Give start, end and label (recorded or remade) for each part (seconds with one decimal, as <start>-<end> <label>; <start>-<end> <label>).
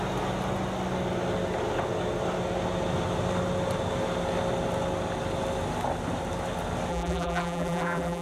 0.0-6.9 recorded; 6.9-8.2 remade